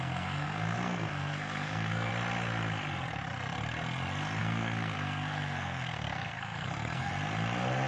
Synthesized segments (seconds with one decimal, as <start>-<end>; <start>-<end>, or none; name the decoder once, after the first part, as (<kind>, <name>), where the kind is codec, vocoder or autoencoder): 0.0-2.1 (codec, SNAC); 4.4-7.1